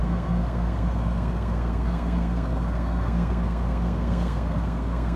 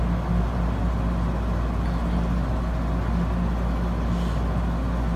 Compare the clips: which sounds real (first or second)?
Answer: second